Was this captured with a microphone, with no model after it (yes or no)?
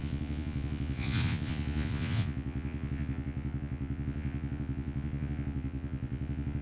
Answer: no